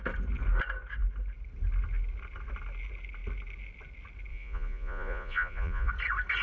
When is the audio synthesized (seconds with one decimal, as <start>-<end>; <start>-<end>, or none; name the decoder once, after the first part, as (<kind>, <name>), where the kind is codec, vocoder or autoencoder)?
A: 4.3-5.9 (vocoder, Vocos)